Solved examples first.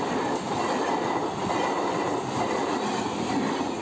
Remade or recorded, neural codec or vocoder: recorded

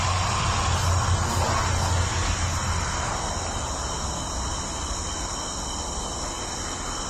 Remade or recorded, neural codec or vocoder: recorded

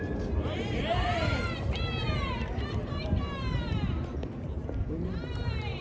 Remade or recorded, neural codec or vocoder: remade, vocoder, BigVGAN v2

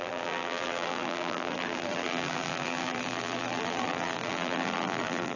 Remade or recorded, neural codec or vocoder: remade, vocoder, BigVGAN v2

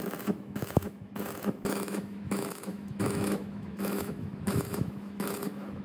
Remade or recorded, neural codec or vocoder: remade, autoencoder, DAC-VAE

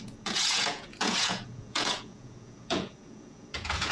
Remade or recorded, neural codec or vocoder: remade, vocoder, Vocos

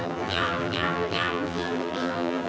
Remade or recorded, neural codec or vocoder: remade, vocoder, BigVGAN v2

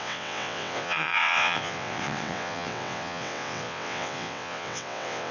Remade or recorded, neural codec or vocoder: remade, vocoder, WaveNeXt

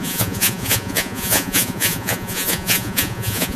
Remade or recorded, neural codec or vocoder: remade, vocoder, Vocos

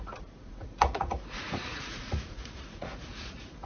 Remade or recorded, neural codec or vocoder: remade, vocoder, Vocos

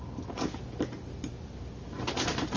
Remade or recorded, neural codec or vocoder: recorded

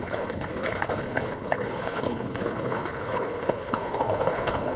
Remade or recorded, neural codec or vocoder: remade, codec, HILCodec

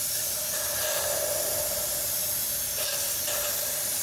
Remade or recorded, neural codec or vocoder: recorded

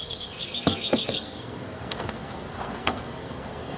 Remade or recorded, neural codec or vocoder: remade, codec, SNAC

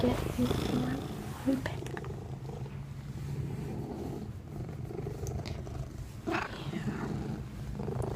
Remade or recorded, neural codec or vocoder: recorded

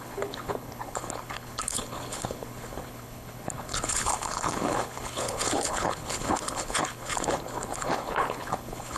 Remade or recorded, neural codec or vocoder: remade, codec, HILCodec